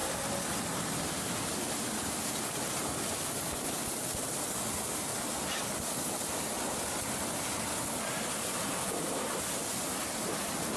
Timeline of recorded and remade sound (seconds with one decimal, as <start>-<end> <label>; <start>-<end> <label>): 0.0-10.8 recorded